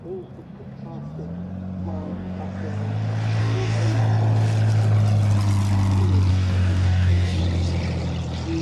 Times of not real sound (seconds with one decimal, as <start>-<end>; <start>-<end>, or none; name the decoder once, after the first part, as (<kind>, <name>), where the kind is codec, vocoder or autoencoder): 1.8-2.4 (codec, DAC); 3.4-4.0; 6.3-7.4